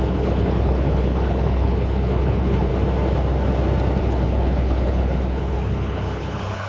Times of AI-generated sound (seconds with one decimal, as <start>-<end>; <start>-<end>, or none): 0.0-2.7; 4.0-6.7